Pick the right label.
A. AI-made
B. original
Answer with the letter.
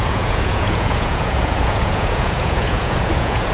A